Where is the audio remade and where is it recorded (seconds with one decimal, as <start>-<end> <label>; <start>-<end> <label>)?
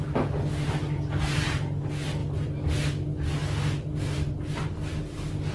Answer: 0.0-5.5 recorded